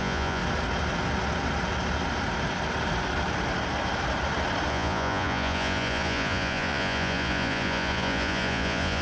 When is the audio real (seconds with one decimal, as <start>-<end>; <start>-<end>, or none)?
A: 0.4-4.7